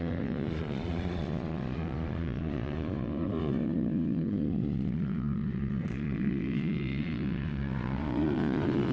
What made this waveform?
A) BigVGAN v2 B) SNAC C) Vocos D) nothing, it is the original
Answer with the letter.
C